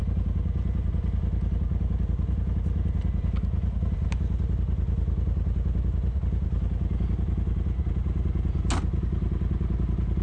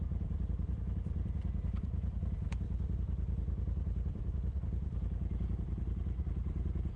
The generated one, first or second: second